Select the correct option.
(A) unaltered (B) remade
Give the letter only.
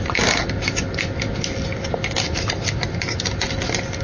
A